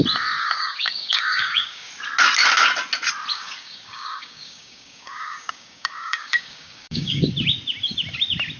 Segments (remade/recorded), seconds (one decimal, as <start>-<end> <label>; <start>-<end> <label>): 0.0-0.4 recorded; 0.4-1.9 remade; 1.9-3.3 recorded; 3.3-7.3 remade; 7.3-8.6 recorded